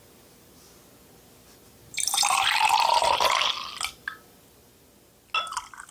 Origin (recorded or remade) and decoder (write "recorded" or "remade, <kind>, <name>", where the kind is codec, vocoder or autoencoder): recorded